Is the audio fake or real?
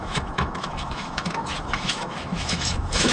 fake